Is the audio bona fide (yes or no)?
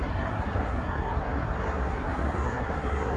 no